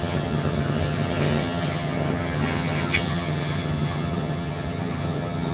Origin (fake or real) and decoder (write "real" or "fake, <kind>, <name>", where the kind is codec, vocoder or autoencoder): fake, vocoder, HiFi-GAN